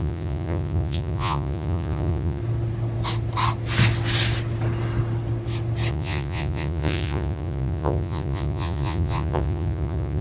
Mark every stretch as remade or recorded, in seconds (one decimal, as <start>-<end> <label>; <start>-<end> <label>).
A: 0.0-2.4 remade; 2.4-5.9 recorded; 5.9-10.2 remade